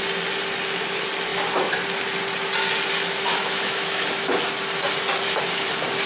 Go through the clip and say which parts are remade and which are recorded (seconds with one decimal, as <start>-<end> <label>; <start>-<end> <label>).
0.0-3.3 recorded; 3.3-4.3 remade; 4.3-6.1 recorded